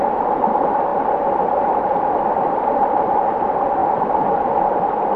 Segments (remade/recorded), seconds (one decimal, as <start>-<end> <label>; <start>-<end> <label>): 0.0-0.9 recorded; 0.9-3.1 remade; 3.1-5.2 recorded